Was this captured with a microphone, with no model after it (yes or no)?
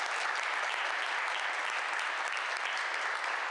yes